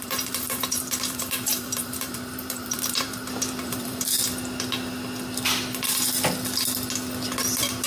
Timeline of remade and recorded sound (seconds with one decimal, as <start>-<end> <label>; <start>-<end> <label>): 0.0-4.2 remade; 4.2-7.9 recorded